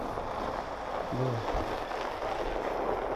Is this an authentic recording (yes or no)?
yes